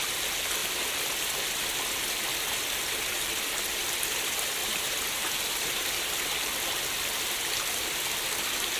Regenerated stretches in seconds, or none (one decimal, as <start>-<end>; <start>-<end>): 4.6-6.1